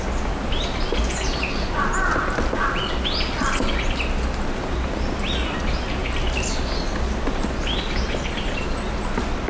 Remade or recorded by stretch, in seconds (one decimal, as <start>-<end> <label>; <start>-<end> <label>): 0.0-9.5 recorded